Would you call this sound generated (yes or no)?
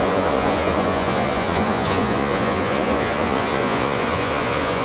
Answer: yes